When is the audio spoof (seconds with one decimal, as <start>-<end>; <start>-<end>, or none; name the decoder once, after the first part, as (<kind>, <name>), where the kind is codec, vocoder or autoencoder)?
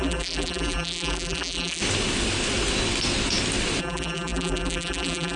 0.0-1.8 (vocoder, BigVGAN v2); 3.8-5.4